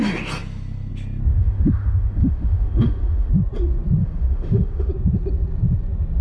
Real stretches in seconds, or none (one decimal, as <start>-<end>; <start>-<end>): 0.0-1.3; 3.3-4.0; 4.9-6.2